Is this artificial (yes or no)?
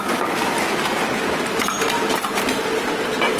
no